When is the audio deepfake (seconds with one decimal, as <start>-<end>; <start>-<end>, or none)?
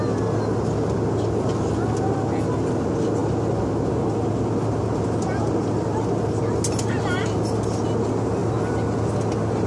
none